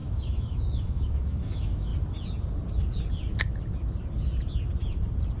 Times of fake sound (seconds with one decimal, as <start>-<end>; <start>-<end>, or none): 0.0-1.9